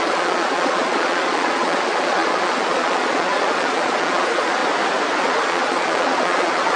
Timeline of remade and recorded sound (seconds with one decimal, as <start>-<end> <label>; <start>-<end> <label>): 0.0-4.6 remade; 4.6-5.2 recorded; 5.2-6.8 remade